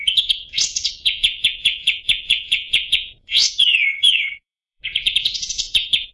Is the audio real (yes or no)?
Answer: no